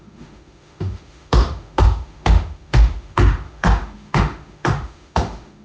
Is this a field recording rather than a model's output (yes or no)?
no